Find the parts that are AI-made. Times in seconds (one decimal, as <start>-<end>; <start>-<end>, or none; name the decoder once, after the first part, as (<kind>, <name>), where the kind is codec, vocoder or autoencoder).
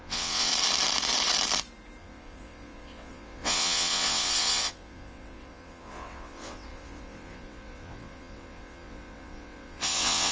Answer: 0.0-0.5 (vocoder, WaveNeXt); 2.0-10.3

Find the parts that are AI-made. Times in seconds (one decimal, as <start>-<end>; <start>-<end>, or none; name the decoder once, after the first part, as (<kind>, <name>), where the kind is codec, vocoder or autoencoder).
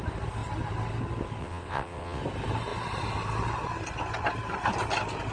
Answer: 1.4-2.2 (vocoder, WaveNeXt)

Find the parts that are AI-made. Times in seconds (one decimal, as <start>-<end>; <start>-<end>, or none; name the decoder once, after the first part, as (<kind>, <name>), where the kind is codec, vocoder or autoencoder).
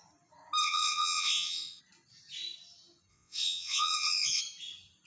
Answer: 0.6-1.8 (vocoder, WaveNeXt); 3.1-4.4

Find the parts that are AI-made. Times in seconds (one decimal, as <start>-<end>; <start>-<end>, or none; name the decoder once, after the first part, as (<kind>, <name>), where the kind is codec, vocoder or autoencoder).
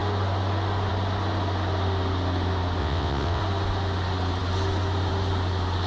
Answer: 2.8-3.4 (vocoder, WaveNeXt)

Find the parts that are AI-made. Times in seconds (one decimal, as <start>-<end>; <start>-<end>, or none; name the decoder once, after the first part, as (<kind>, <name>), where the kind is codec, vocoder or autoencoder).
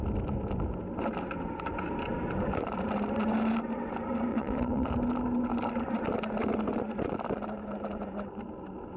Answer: 4.3-4.9 (vocoder, WaveNeXt)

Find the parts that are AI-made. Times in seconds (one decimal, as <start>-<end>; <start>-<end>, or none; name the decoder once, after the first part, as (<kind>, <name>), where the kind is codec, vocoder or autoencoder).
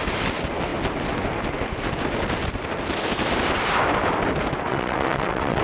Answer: 4.7-5.6 (vocoder, WaveNeXt)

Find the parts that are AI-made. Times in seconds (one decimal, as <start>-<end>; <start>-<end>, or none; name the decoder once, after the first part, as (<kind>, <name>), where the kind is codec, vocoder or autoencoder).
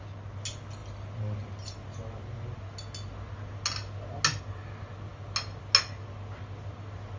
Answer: none